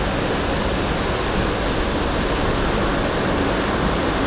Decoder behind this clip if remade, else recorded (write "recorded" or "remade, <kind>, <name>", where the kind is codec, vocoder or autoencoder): recorded